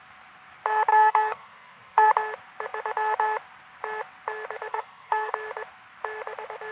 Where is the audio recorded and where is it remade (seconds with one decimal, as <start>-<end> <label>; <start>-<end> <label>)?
0.0-0.9 recorded; 0.9-2.1 remade; 2.1-4.7 recorded; 4.7-5.3 remade; 5.3-6.7 recorded